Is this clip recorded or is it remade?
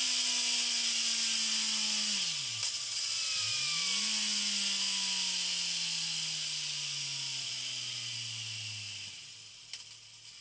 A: recorded